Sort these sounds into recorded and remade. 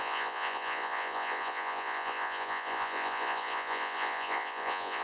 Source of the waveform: remade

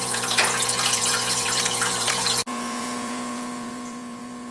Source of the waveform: remade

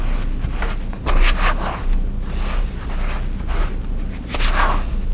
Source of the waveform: recorded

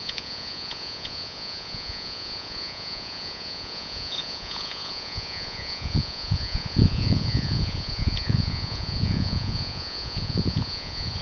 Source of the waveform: remade